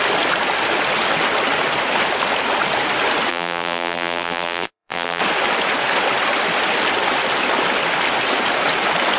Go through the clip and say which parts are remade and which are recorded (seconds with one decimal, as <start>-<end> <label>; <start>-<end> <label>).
0.0-3.3 recorded; 3.3-5.2 remade; 5.2-9.2 recorded